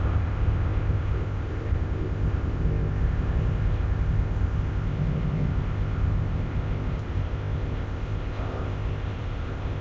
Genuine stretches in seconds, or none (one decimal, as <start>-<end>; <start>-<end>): none